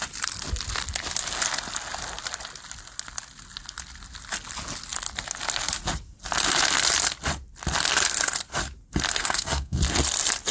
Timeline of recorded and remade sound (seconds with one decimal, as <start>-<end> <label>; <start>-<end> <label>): 0.0-9.2 recorded; 9.2-9.8 remade; 9.8-10.5 recorded